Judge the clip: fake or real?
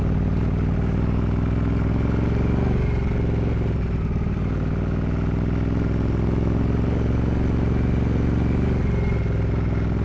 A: real